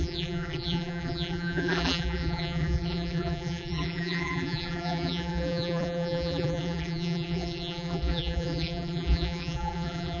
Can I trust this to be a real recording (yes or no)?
no